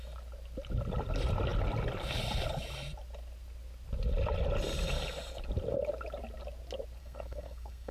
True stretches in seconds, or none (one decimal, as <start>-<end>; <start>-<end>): 0.0-7.0